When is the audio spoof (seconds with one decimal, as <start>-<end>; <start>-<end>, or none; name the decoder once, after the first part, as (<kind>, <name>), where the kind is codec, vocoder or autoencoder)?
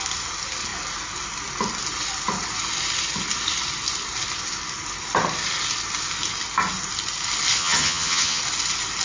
7.6-8.4 (vocoder, HiFi-GAN)